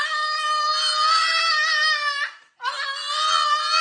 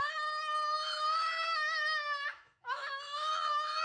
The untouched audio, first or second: first